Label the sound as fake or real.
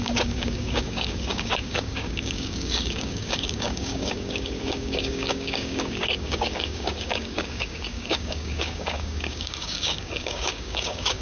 fake